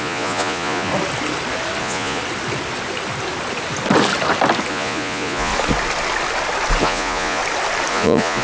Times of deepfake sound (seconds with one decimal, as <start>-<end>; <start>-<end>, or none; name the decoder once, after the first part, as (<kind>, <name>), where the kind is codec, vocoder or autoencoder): 0.0-0.9 (vocoder, Vocos); 1.8-2.2; 4.7-5.5; 6.8-7.4; 7.9-8.4